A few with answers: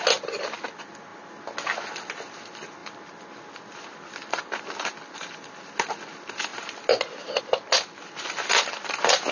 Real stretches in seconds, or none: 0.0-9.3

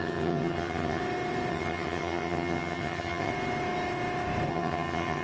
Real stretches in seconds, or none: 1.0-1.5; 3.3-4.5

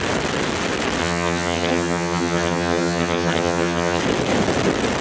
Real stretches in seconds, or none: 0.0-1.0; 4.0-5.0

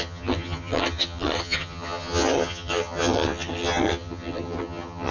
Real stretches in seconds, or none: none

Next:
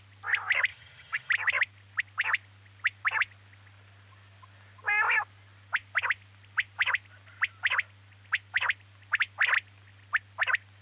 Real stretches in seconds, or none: 0.0-0.7; 1.3-10.8

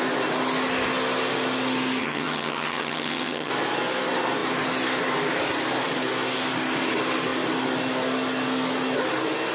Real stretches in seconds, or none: 0.0-2.0; 3.5-9.5

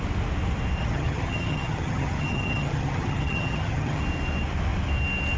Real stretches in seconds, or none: 0.0-0.8; 4.0-5.4

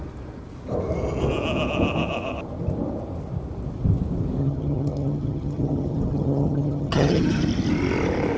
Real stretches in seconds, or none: 0.0-4.4; 7.4-8.4